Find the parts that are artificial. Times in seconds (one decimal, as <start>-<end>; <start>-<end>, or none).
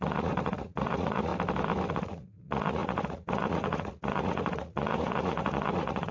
0.0-1.3; 1.9-6.1